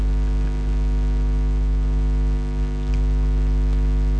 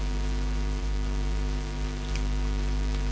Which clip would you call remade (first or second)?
second